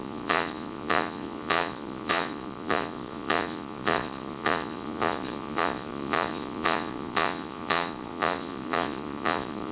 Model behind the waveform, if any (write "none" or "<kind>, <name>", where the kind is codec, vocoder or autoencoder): vocoder, Vocos